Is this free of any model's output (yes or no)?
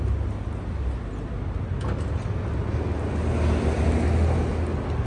yes